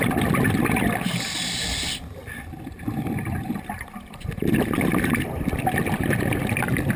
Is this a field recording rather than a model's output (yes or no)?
yes